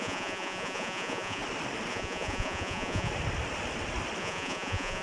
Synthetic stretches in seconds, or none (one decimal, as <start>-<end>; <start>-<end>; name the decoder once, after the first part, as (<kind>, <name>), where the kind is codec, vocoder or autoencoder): 0.0-1.4 (vocoder, Vocos); 1.9-3.1; 4.2-5.0

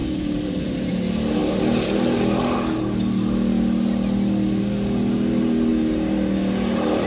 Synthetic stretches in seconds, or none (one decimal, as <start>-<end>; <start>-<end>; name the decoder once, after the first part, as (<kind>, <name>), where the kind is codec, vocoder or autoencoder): 0.0-0.9 (vocoder, BigVGAN v2)

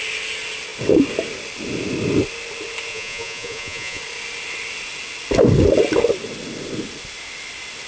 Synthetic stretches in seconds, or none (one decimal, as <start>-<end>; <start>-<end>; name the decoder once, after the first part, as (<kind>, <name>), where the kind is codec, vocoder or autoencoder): 2.9-4.0 (vocoder, Vocos)

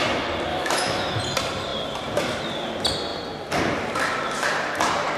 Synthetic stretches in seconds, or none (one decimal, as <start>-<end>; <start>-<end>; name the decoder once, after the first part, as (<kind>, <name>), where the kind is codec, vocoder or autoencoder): 0.5-1.2 (autoencoder, DAC-VAE)

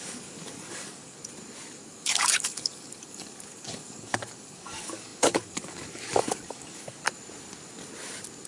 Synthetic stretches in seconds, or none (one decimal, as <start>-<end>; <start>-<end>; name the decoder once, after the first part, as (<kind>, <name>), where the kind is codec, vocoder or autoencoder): 0.0-1.2 (codec, DAC); 1.7-7.0

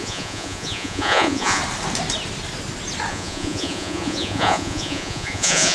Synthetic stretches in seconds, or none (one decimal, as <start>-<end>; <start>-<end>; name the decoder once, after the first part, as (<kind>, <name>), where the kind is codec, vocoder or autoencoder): 0.0-1.6 (vocoder, Vocos); 3.1-5.7